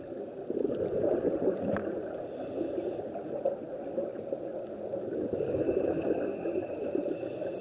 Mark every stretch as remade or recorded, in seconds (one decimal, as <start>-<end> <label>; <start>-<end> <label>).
0.0-7.6 recorded